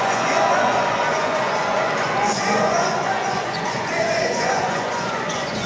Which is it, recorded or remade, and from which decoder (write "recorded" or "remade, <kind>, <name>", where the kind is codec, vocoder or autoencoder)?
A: remade, vocoder, Vocos